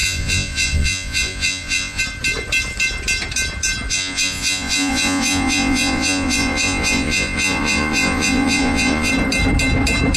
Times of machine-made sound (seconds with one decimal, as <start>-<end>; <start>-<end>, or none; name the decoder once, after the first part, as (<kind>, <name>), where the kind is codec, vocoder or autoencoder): 0.0-2.0 (vocoder, Vocos); 3.9-9.1